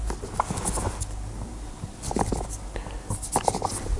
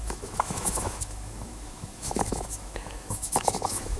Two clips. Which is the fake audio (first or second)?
second